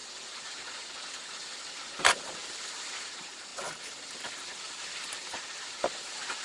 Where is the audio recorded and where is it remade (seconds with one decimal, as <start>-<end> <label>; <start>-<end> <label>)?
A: 0.0-2.4 recorded; 2.4-2.9 remade; 2.9-3.5 recorded; 3.5-5.8 remade; 5.8-6.4 recorded